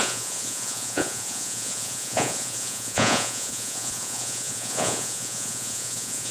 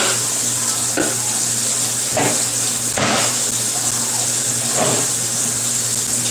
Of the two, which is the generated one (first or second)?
first